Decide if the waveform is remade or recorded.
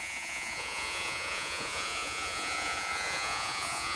remade